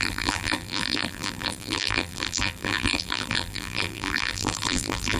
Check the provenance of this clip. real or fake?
fake